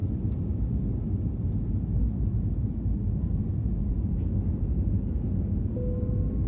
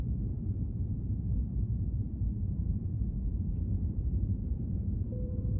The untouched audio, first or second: first